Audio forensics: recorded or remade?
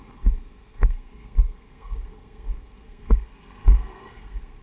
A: remade